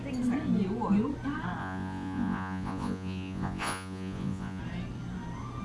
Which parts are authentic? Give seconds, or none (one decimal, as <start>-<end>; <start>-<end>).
0.0-1.6; 4.6-5.6